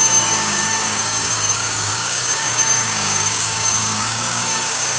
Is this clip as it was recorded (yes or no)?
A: no